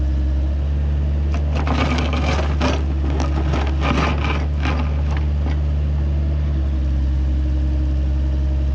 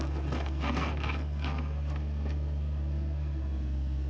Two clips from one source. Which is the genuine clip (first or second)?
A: first